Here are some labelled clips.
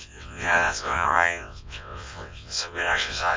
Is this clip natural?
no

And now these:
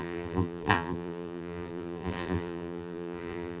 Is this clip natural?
no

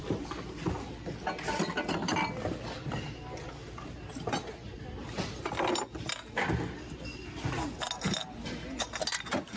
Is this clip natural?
yes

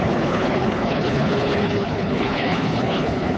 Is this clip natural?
no